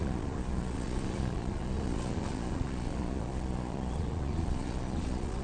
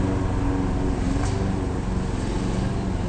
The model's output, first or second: first